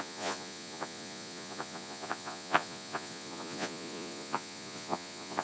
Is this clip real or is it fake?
fake